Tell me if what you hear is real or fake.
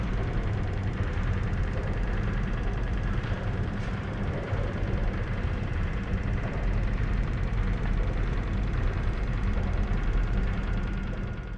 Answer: fake